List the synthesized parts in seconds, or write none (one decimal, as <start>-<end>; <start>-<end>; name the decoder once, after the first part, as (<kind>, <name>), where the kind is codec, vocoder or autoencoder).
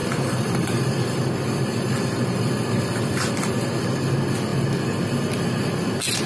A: 0.0-3.8 (vocoder, BigVGAN v2)